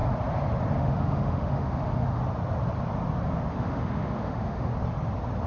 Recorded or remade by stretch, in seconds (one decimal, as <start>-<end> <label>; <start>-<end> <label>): 0.0-0.8 recorded; 0.8-2.2 remade; 2.2-3.5 recorded; 3.5-4.7 remade; 4.7-5.5 recorded